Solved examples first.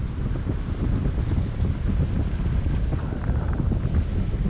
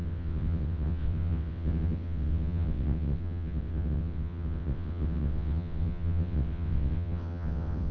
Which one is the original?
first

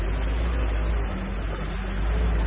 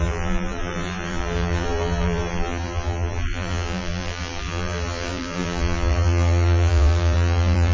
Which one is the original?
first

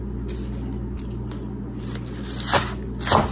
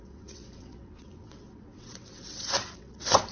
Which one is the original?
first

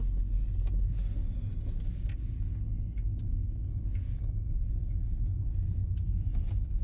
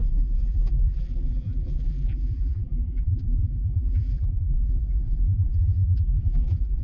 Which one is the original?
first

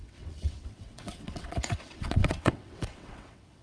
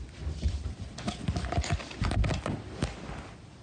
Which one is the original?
second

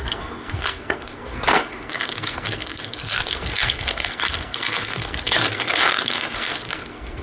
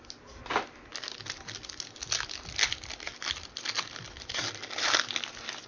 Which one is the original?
second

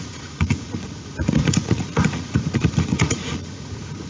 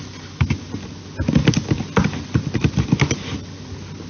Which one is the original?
second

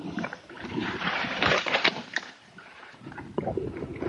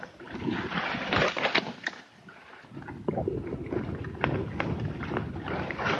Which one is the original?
second